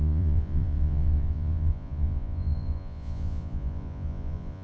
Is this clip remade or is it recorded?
remade